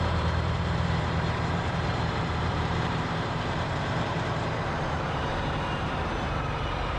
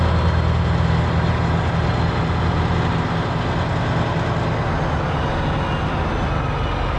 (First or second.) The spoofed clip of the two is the first